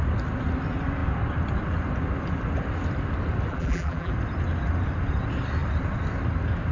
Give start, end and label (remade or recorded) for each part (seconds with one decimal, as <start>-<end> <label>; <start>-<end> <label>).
0.0-3.5 recorded; 3.5-4.1 remade; 4.1-6.7 recorded